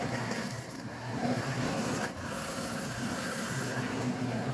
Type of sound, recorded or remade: remade